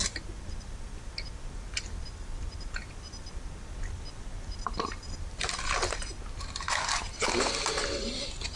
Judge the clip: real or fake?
real